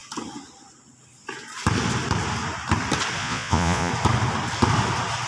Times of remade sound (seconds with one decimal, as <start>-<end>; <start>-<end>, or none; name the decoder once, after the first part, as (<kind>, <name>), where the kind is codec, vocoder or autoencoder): 3.2-3.9 (vocoder, Vocos)